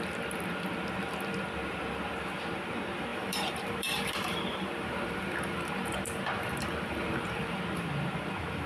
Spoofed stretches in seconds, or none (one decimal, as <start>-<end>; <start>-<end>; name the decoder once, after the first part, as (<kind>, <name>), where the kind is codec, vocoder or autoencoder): 3.1-7.6 (vocoder, BigVGAN v2)